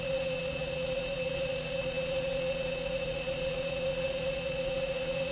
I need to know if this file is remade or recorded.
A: remade